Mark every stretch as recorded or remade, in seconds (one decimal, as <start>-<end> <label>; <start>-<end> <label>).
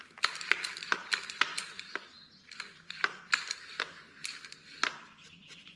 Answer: 0.0-1.0 remade; 1.0-4.5 recorded; 4.5-5.8 remade